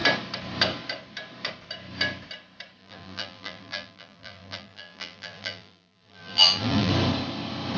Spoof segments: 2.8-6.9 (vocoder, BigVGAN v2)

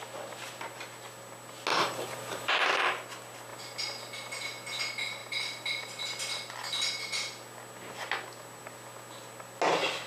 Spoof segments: 1.7-2.5 (vocoder, BigVGAN v2)

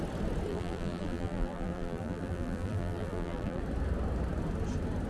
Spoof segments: 0.5-3.6 (vocoder, BigVGAN v2)

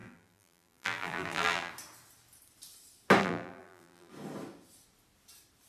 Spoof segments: 0.0-1.7 (vocoder, BigVGAN v2); 3.2-4.1

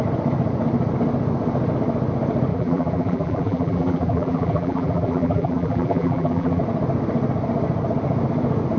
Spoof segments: 2.5-6.6 (vocoder, BigVGAN v2)

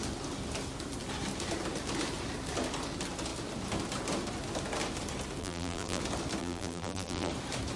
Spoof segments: 5.4-6.0 (vocoder, BigVGAN v2); 6.4-7.3

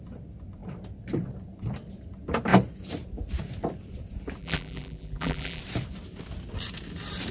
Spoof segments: 4.4-5.6 (vocoder, BigVGAN v2)